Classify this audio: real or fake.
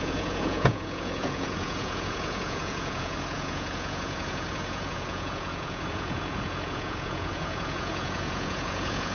fake